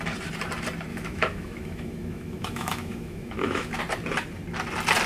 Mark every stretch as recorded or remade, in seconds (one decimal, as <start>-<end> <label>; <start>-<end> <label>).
0.0-0.9 recorded; 0.9-3.8 remade; 3.8-5.1 recorded

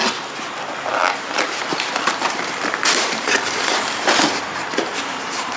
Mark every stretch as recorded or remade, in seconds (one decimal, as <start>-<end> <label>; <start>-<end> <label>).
0.0-1.1 recorded; 1.1-5.6 remade

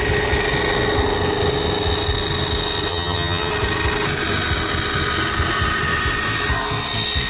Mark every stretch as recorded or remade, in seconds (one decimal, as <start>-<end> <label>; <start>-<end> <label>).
0.0-2.9 recorded; 2.9-3.5 remade; 3.5-7.3 recorded

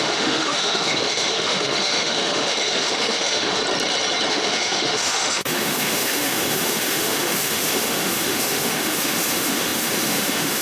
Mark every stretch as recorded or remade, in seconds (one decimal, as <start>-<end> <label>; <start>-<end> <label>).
0.0-3.6 remade; 3.6-4.3 recorded; 4.3-10.6 remade

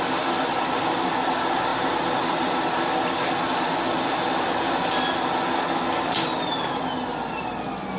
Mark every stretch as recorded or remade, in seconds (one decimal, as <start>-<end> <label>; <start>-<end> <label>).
0.0-8.0 recorded

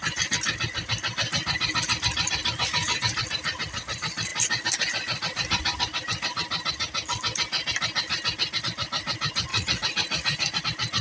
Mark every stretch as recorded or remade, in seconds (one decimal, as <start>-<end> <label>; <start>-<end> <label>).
0.0-9.5 recorded; 9.5-10.6 remade; 10.6-11.0 recorded